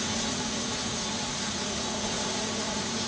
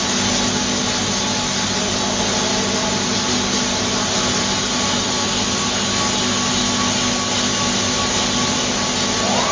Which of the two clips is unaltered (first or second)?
second